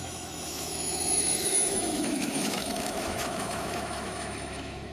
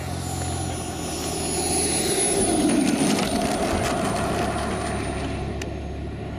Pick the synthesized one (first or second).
first